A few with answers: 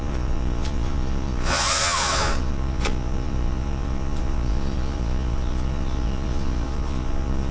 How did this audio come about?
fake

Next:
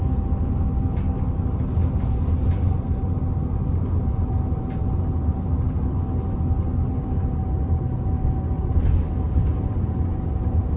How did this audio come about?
real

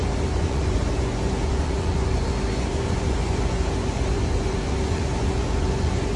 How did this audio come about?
fake